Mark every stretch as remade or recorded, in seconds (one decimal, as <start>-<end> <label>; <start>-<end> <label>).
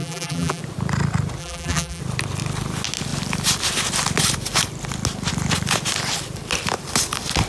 0.0-0.6 remade; 0.6-1.4 recorded; 1.4-2.0 remade; 2.0-7.5 recorded